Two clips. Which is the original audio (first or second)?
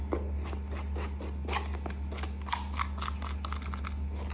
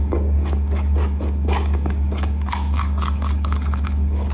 first